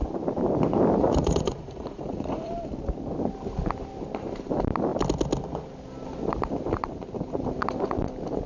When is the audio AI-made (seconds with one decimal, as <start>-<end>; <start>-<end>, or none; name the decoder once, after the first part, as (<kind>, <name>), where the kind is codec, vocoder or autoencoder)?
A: 1.0-2.5 (vocoder, Vocos)

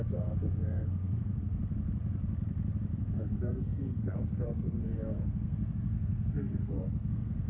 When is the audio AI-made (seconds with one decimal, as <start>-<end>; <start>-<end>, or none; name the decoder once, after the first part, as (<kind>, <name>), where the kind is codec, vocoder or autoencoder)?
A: 0.0-1.6 (codec, SNAC); 3.0-7.5

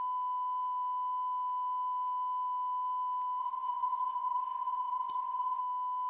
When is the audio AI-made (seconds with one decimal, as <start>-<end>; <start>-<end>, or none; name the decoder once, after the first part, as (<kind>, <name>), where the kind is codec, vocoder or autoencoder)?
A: 3.4-5.6 (codec, HILCodec)

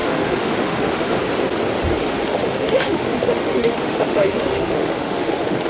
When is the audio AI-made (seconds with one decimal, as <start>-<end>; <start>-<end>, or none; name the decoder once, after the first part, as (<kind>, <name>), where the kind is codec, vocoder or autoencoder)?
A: 0.0-1.2 (autoencoder, DAC-VAE); 2.0-5.7

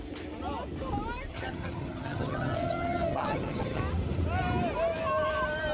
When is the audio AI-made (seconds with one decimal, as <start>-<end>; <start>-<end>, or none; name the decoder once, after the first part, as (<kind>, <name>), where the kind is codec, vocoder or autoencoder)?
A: 1.3-3.8 (vocoder, HiFi-GAN)